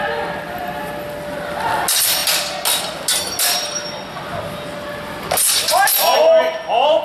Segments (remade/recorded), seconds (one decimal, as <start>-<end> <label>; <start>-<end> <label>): 0.0-7.0 recorded